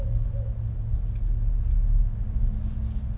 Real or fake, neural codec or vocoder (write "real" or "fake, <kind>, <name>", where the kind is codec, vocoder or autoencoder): real